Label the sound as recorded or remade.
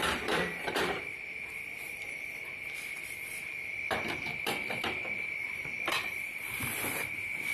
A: remade